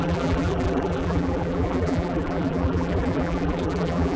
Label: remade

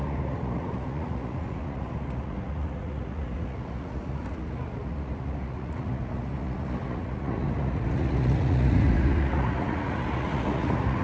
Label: remade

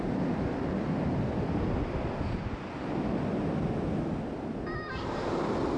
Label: recorded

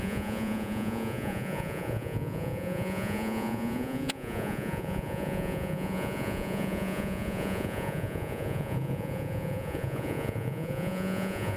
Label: remade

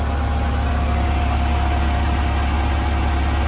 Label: recorded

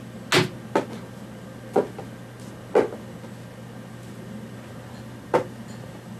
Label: recorded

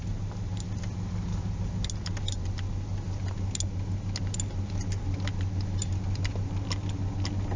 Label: recorded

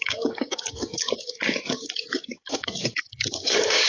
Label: remade